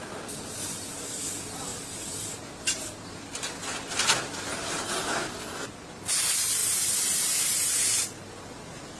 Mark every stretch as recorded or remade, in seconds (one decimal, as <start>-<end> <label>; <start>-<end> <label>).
0.0-9.0 recorded